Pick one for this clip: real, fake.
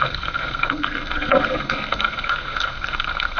fake